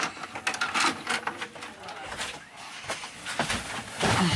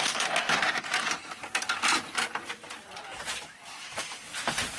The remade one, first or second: second